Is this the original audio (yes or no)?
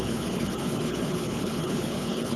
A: no